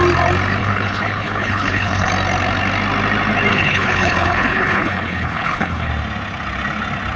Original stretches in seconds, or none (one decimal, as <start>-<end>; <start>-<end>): 0.0-0.6; 2.1-3.5; 5.9-7.2